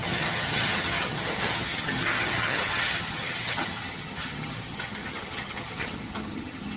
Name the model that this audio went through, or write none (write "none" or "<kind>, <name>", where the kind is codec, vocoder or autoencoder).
vocoder, HiFi-GAN